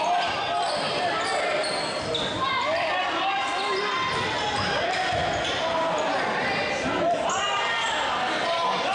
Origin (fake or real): real